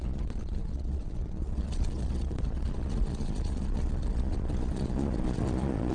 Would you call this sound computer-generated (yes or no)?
yes